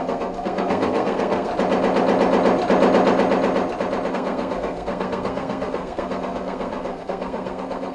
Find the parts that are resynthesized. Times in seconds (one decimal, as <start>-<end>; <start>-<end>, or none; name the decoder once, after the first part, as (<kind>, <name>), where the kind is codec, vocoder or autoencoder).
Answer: 0.0-1.5 (codec, SNAC); 4.1-7.9